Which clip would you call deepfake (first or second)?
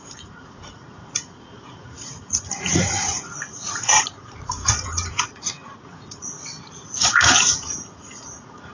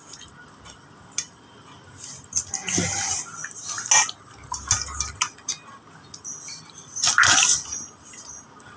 first